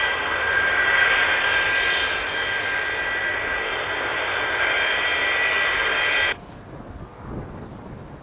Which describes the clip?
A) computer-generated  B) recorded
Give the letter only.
B